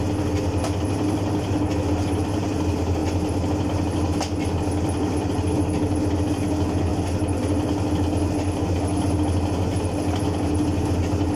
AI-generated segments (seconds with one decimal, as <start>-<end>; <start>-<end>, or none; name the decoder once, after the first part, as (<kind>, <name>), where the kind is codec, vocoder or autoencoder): none